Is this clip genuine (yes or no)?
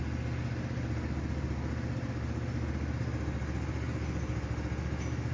yes